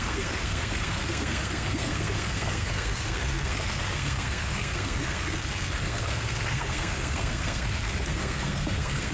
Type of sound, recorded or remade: remade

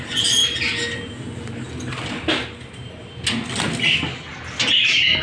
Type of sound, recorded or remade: recorded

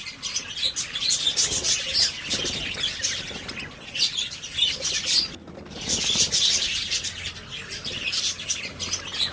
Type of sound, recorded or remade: recorded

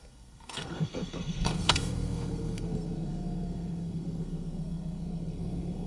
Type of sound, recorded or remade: remade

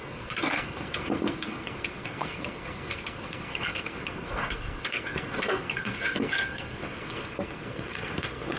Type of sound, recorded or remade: remade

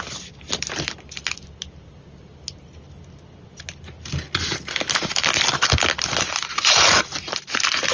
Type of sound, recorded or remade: recorded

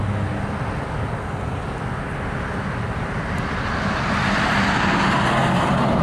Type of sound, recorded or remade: recorded